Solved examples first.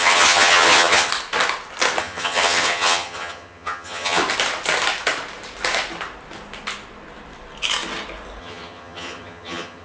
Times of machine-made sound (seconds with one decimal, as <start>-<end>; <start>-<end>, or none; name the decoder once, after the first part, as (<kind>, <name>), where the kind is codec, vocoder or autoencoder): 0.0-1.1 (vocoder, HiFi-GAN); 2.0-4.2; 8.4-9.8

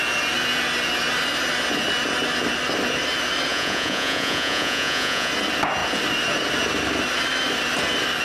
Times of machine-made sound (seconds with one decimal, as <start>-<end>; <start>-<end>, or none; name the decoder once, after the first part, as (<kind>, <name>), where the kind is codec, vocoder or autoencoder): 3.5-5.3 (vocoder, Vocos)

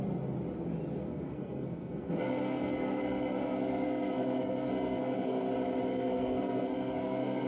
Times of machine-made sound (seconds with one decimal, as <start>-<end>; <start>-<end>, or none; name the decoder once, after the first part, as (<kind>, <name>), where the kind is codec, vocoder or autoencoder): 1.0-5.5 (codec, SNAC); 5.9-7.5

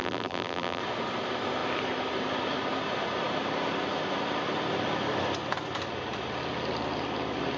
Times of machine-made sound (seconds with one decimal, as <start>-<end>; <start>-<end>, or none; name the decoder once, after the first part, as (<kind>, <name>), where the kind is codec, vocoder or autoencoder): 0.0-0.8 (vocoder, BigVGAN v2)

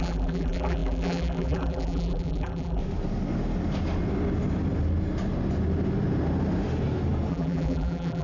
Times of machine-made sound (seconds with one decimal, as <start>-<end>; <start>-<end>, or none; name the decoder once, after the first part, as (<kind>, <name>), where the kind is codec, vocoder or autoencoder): 0.0-2.8 (vocoder, BigVGAN v2); 7.3-8.2

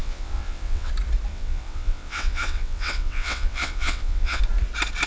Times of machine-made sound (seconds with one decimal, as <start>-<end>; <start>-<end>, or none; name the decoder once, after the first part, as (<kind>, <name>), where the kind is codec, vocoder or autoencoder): 0.0-0.9 (vocoder, WaveNeXt); 1.3-4.4